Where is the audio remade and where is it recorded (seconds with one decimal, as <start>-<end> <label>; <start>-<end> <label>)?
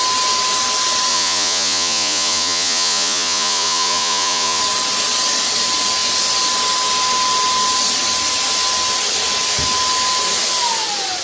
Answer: 0.0-1.1 recorded; 1.1-4.6 remade; 4.6-11.2 recorded